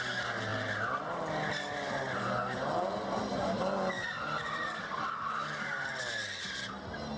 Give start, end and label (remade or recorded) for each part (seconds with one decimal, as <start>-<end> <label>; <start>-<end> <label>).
0.0-7.2 recorded